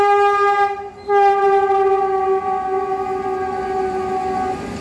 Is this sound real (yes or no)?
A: yes